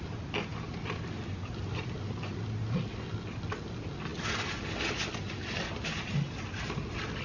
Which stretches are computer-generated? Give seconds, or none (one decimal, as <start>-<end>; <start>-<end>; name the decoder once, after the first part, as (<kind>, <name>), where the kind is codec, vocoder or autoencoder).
none